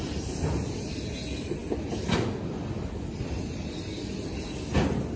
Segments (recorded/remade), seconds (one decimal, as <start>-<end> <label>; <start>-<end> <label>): 0.0-5.2 recorded